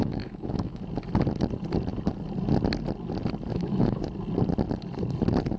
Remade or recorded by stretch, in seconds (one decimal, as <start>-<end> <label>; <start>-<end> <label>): 0.0-0.8 remade; 0.8-3.5 recorded; 3.5-4.0 remade; 4.0-5.6 recorded